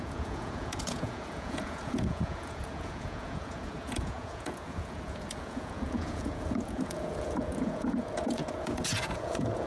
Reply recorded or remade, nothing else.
remade